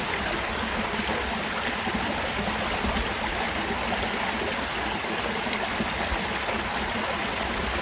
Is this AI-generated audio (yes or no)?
no